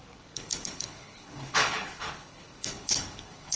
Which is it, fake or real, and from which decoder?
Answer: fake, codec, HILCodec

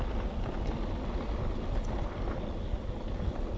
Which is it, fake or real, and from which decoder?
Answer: real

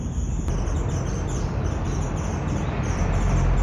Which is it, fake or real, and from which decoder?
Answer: real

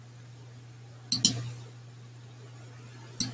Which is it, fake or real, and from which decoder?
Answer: real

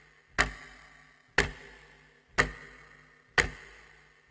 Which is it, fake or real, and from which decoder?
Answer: real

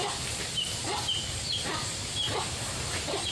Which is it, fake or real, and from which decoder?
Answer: fake, vocoder, BigVGAN v2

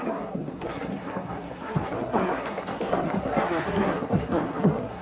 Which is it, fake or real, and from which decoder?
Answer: fake, codec, SNAC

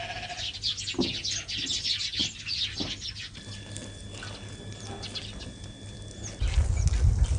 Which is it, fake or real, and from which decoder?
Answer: real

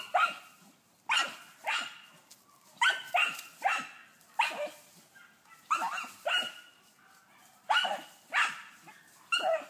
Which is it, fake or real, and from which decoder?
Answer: real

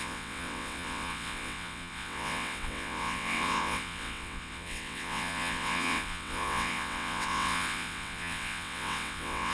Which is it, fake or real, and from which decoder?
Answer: fake, vocoder, WaveNeXt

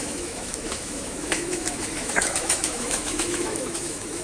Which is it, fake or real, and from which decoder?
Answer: fake, autoencoder, DAC-VAE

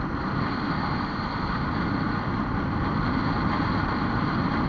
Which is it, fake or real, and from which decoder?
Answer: real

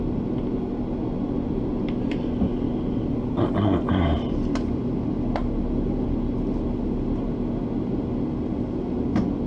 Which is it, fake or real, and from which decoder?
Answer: real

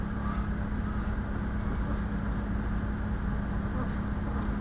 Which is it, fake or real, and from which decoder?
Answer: real